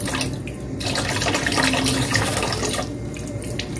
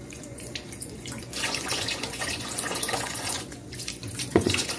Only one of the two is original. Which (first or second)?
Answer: first